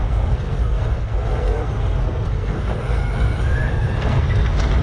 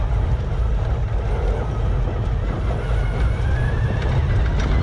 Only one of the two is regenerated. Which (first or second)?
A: first